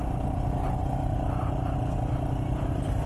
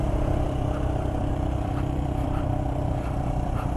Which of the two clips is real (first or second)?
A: first